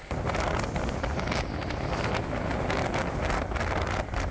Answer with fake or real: real